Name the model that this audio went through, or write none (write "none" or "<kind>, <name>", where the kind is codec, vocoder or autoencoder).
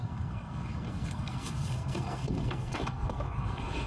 codec, SNAC